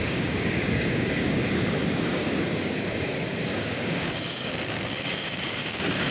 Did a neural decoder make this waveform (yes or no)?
yes